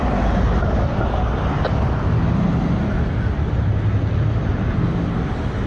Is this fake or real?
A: real